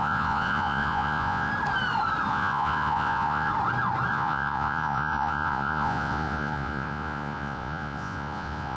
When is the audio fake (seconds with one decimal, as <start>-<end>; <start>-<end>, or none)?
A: 0.0-1.5; 2.3-3.5; 4.1-8.8